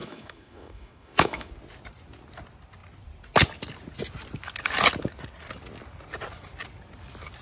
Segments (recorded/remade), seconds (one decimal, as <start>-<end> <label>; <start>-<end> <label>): 0.0-1.5 remade; 1.5-7.4 recorded